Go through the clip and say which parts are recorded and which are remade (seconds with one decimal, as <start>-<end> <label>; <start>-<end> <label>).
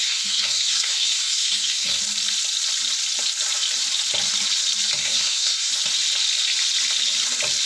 0.0-2.0 remade; 2.0-5.0 recorded; 5.0-5.7 remade; 5.7-7.7 recorded